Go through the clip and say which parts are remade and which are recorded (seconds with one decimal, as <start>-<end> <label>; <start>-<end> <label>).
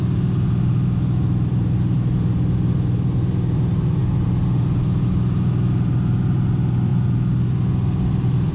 0.0-8.5 recorded